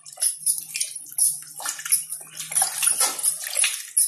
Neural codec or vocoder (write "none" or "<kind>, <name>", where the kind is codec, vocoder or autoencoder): none